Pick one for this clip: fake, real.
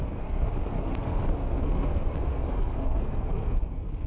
fake